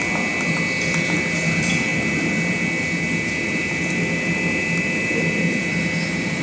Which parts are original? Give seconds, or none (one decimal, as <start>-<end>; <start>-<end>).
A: 0.0-6.4